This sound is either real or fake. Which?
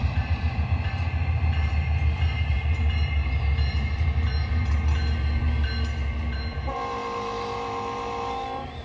fake